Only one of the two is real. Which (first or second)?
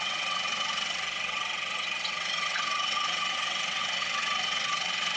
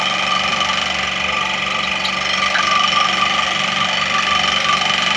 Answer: second